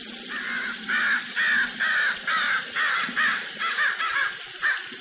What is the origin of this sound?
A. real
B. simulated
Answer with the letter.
A